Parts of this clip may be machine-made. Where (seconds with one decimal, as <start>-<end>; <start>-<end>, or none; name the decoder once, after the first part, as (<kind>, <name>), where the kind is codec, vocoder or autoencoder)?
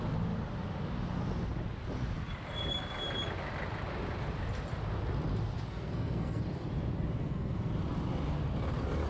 5.7-6.4 (codec, SNAC); 7.2-7.7